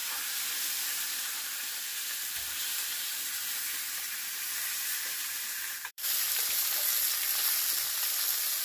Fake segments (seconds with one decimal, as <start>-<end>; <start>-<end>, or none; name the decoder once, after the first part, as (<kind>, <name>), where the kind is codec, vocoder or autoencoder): 0.0-0.5 (vocoder, BigVGAN v2); 1.9-6.6